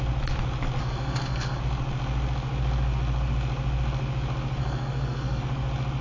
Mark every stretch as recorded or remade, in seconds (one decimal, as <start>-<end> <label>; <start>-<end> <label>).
0.0-0.8 recorded; 0.8-1.6 remade; 1.6-4.6 recorded; 4.6-5.4 remade; 5.4-6.0 recorded